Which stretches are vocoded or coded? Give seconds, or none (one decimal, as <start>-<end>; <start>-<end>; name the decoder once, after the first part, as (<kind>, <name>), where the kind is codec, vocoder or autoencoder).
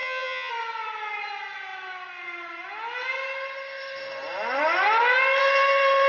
0.0-0.5 (vocoder, HiFi-GAN)